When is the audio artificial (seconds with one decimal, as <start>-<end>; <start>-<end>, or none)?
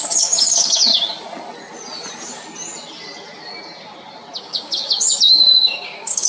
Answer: 0.0-0.9; 4.4-6.3